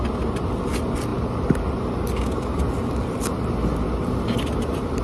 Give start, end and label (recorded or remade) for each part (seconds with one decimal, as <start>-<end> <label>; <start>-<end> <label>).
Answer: 0.0-5.0 recorded